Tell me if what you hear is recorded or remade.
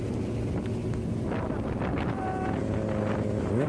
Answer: recorded